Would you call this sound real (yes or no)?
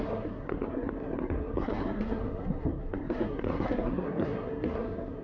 no